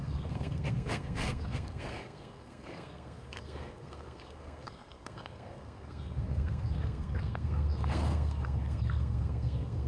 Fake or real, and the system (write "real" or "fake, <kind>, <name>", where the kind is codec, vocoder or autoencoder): fake, codec, SNAC